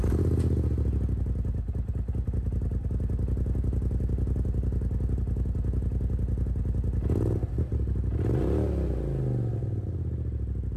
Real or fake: real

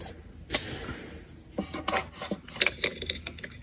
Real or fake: real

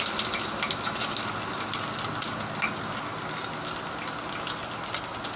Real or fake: real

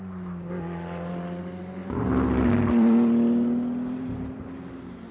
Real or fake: real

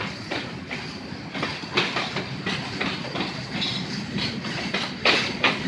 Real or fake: real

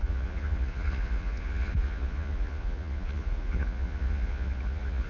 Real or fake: fake